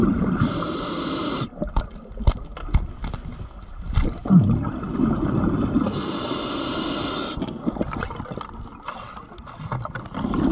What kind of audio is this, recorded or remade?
recorded